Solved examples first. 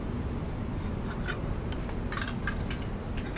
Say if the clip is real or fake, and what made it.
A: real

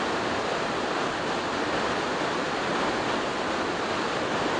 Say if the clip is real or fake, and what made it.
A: real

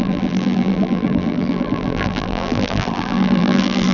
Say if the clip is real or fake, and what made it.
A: fake, vocoder, BigVGAN v2